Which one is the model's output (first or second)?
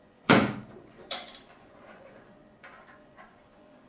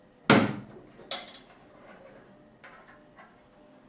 first